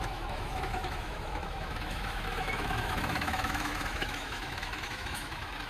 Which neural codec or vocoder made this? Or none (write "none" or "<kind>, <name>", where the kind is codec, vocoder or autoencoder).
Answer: autoencoder, DAC-VAE